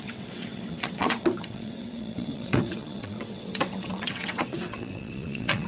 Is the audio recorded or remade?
remade